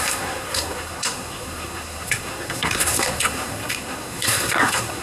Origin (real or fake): fake